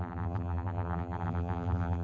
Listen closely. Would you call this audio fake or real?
fake